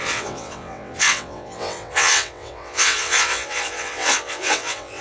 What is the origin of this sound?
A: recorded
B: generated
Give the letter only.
B